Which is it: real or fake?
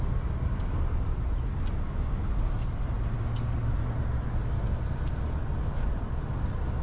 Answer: real